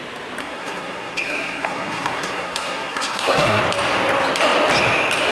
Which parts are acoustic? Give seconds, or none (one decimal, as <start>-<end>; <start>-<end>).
0.0-0.4; 3.6-5.3